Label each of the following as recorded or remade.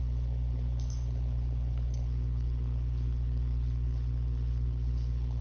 remade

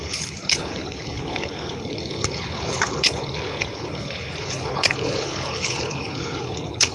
remade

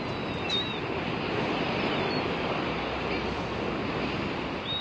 recorded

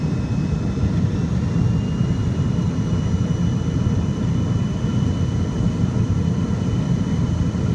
recorded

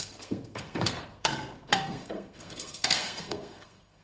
remade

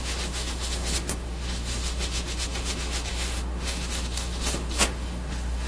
remade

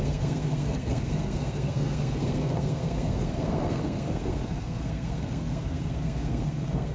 remade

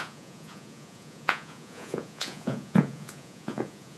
remade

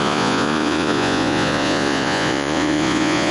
remade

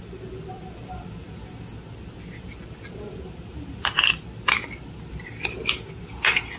recorded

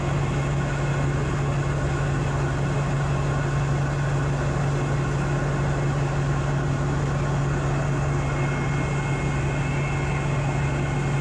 recorded